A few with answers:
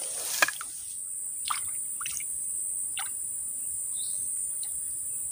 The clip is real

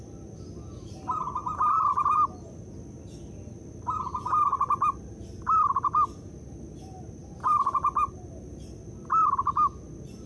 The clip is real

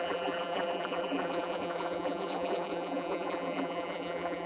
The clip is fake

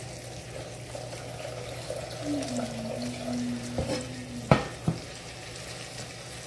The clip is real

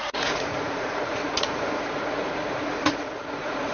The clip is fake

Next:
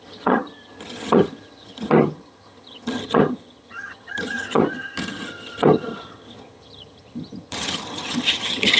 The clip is fake